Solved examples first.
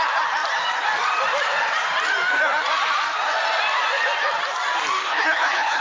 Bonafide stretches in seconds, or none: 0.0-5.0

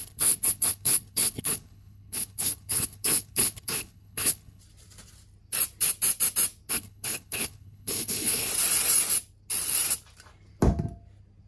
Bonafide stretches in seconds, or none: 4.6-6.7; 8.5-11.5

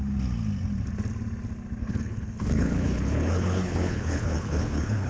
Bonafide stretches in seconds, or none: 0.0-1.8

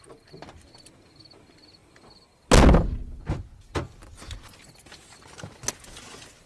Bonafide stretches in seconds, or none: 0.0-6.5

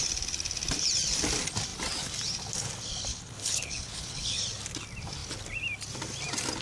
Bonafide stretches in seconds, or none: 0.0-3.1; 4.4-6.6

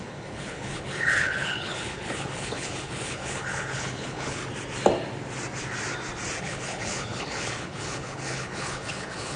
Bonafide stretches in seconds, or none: 4.4-6.4